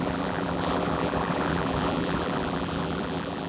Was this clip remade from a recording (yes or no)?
yes